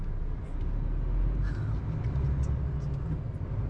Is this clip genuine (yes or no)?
yes